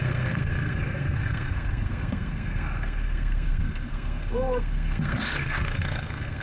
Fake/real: fake